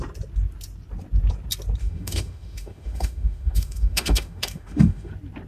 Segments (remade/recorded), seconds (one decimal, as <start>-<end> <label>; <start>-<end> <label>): 0.0-1.8 recorded; 1.8-5.1 remade; 5.1-5.5 recorded